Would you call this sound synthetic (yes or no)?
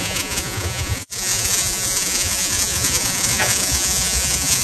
yes